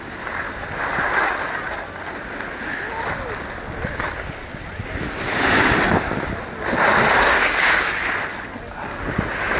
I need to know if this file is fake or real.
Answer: real